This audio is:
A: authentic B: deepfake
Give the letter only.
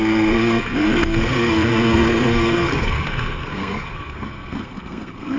B